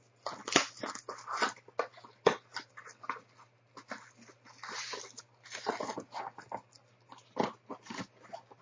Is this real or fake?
real